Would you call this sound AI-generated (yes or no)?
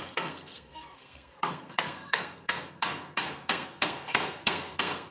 yes